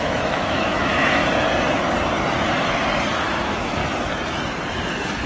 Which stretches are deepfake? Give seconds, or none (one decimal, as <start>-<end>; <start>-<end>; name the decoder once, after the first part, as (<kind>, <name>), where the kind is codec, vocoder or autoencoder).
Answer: 0.0-1.2 (autoencoder, DAC-VAE); 3.2-3.8